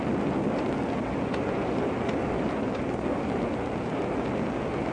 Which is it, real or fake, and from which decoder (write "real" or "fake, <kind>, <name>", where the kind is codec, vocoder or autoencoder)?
real